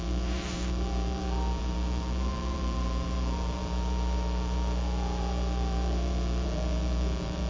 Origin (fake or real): fake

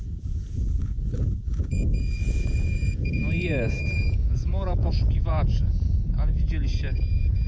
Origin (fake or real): fake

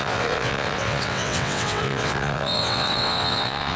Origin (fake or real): fake